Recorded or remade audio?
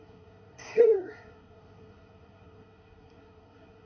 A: remade